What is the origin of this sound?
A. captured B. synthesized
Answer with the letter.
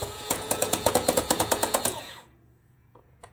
B